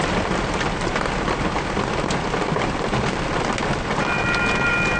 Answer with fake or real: real